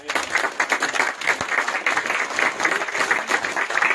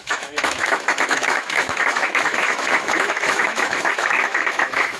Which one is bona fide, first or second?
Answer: first